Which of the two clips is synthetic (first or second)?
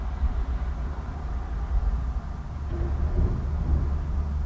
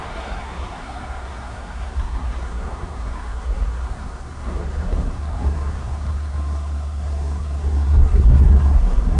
second